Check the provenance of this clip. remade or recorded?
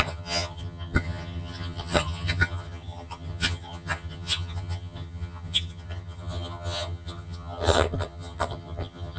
remade